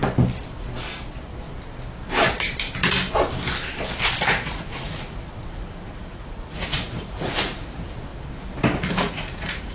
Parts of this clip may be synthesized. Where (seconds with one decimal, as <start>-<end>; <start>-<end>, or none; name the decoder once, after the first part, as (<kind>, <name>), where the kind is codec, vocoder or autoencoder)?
4.3-8.1 (vocoder, Vocos); 8.9-9.7